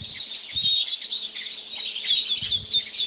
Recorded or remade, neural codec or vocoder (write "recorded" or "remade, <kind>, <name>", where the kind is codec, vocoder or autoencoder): recorded